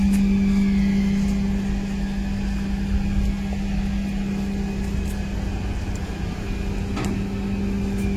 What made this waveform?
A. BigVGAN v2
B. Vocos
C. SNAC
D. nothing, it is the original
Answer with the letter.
D